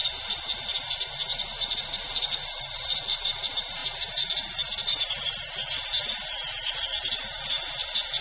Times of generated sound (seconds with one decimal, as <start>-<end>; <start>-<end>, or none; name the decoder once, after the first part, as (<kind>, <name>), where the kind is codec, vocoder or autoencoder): 0.0-3.8 (vocoder, BigVGAN v2)